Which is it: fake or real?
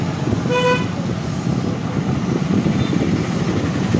real